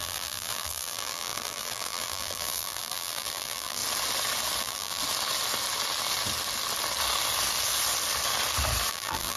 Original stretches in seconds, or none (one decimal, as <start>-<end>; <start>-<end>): 3.8-4.6; 5.0-8.9